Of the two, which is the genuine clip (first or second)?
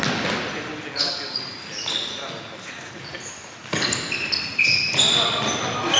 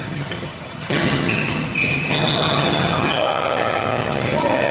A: first